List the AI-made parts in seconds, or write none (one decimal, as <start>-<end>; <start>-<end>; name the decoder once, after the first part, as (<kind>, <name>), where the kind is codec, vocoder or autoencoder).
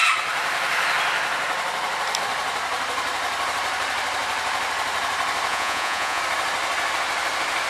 5.5-6.2 (vocoder, Vocos)